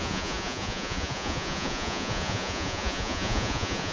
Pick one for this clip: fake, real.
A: fake